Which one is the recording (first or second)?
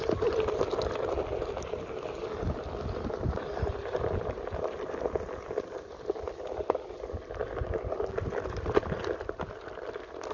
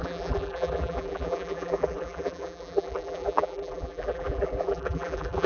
first